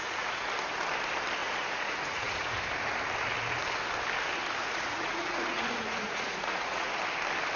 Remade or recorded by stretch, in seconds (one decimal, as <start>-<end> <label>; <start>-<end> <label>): 0.0-0.5 remade; 0.5-1.4 recorded; 1.4-2.6 remade; 2.6-4.6 recorded; 4.6-7.0 remade; 7.0-7.6 recorded